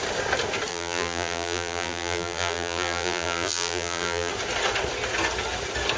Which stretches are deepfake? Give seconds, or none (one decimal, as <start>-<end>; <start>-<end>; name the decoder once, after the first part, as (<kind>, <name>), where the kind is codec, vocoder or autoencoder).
0.7-4.3 (vocoder, BigVGAN v2)